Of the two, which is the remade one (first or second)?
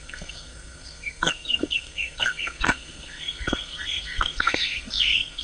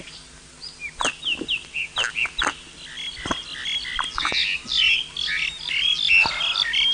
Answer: first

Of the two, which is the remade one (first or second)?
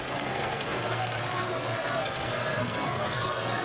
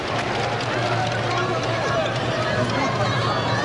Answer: first